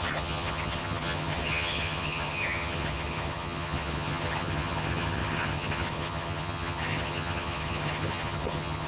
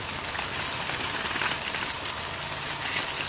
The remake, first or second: first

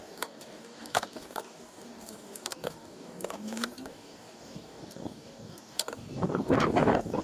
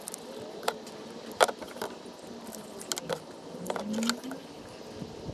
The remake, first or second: first